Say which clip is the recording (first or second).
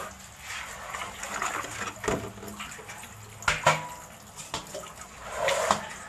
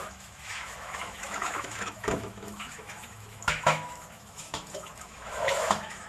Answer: first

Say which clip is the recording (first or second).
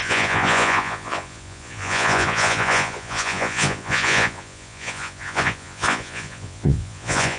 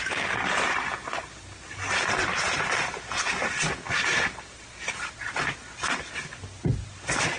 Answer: second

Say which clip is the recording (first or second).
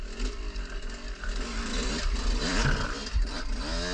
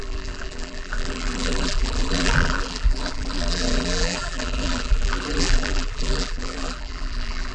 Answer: first